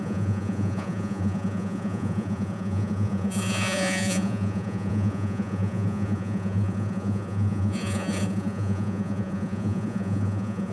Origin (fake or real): fake